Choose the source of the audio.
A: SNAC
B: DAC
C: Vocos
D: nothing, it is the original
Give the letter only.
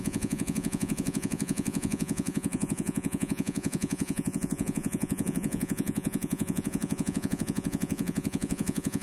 C